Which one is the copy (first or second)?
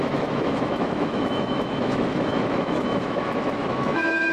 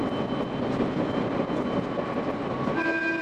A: first